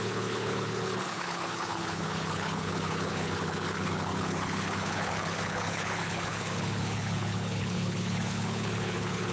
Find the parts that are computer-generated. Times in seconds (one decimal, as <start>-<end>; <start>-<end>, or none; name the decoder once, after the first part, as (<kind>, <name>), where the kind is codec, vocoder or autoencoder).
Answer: 0.0-9.3 (codec, HILCodec)